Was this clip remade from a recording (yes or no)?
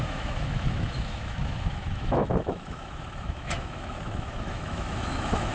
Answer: yes